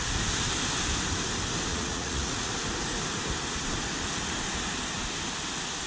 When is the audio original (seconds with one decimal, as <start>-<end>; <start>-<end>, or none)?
0.0-1.7; 2.5-5.9